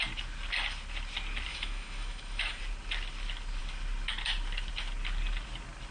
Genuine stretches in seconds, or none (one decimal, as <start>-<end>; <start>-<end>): 0.0-1.5; 2.6-5.9